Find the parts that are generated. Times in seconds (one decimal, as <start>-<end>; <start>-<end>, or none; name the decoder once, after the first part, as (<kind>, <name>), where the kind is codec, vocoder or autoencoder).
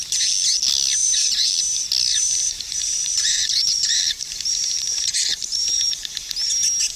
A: 1.0-1.5 (vocoder, BigVGAN v2); 2.1-5.9